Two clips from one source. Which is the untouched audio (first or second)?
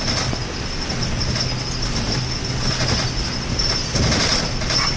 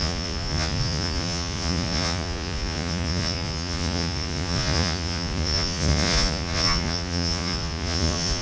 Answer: first